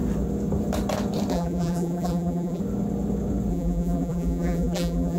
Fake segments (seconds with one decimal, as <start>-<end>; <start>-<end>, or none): 1.3-2.6; 3.5-5.2